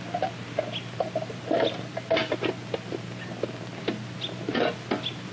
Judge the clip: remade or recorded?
recorded